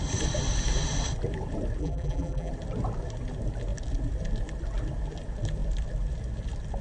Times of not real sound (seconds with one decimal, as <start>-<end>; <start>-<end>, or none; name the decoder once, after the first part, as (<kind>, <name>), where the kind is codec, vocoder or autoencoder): 1.8-2.5 (vocoder, BigVGAN v2)